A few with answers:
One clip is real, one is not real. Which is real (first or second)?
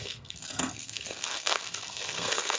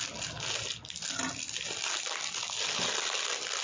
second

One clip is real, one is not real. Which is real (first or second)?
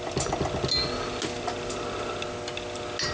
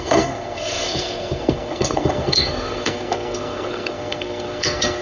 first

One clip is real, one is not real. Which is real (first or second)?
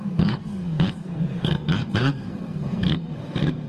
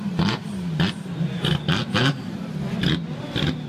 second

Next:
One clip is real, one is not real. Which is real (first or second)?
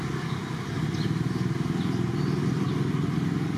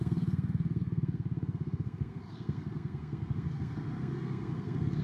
first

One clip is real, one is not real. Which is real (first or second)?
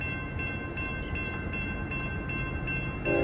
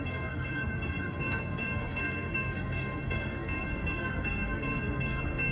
first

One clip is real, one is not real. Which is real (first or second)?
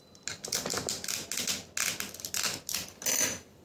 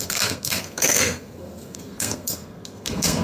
first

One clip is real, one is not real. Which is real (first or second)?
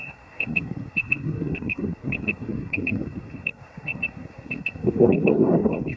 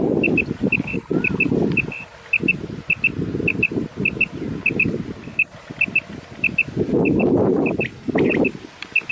second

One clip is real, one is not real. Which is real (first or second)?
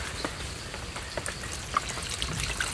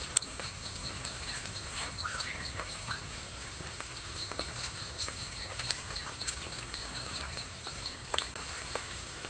first